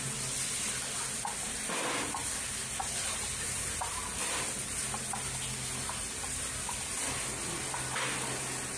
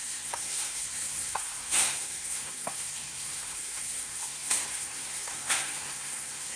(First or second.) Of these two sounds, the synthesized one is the second